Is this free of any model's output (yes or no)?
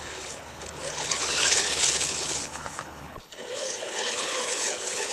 no